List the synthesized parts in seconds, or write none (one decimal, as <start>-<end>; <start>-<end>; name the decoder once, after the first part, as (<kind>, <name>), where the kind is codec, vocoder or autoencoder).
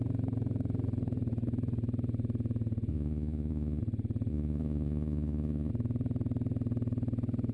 2.9-3.8 (vocoder, Vocos); 4.3-5.7